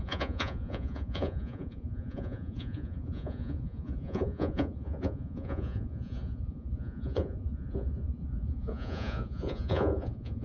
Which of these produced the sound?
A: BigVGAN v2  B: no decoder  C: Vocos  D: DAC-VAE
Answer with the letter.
C